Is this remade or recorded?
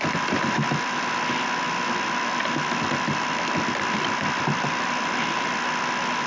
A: recorded